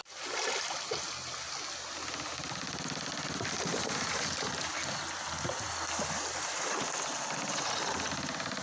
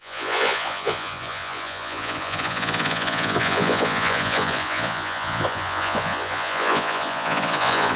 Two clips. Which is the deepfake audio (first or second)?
second